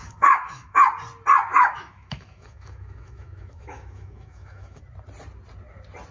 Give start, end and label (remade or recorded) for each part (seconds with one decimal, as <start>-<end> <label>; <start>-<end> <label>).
0.0-0.8 remade; 0.8-1.5 recorded; 1.5-4.8 remade; 4.8-6.1 recorded